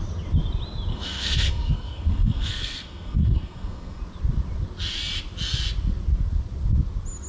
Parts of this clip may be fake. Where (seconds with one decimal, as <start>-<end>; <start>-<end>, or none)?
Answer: 0.9-4.0